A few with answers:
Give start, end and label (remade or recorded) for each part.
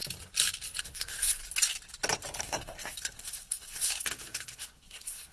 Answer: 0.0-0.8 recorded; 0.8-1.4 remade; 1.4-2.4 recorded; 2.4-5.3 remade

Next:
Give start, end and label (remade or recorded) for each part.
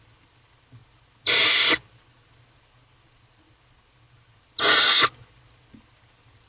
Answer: 0.0-6.5 recorded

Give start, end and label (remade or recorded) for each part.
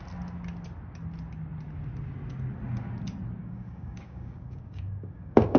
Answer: 0.0-3.4 recorded; 3.4-5.6 remade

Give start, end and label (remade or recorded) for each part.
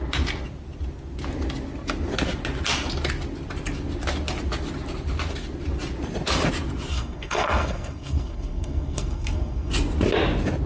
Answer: 0.0-6.9 recorded; 6.9-9.7 remade; 9.7-10.7 recorded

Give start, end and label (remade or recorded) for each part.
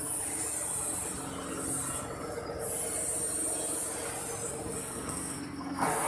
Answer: 0.0-4.8 recorded; 4.8-6.1 remade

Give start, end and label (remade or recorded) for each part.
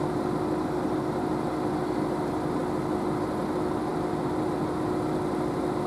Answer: 0.0-5.9 recorded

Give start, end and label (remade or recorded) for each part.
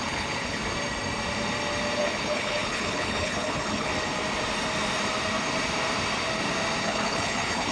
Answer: 0.0-0.6 remade; 0.6-2.0 recorded; 2.0-3.9 remade; 3.9-6.8 recorded; 6.8-7.7 remade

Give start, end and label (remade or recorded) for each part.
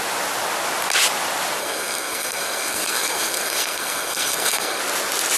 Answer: 0.0-1.6 recorded; 1.6-4.8 remade; 4.8-5.4 recorded